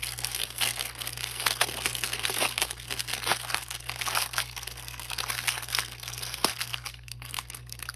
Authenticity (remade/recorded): remade